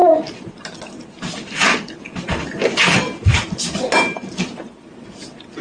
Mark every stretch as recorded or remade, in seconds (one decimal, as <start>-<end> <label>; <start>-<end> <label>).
0.0-5.6 recorded